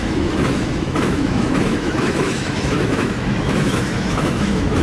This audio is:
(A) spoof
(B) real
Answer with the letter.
A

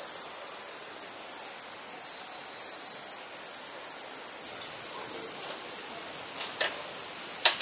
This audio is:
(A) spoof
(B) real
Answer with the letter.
B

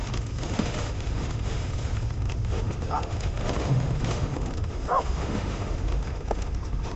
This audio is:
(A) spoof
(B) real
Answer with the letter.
A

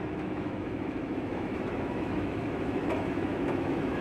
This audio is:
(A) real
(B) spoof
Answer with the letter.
B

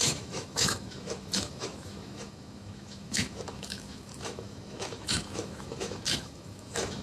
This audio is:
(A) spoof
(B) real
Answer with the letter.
A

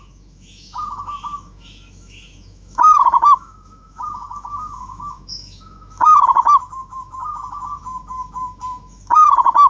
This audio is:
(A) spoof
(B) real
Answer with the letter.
A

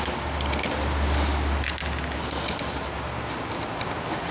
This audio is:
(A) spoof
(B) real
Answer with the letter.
B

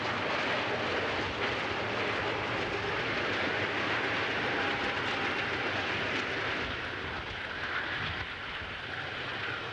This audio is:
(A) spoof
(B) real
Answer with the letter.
B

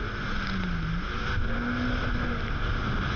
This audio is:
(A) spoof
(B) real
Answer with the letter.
B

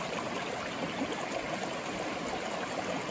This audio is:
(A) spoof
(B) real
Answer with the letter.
B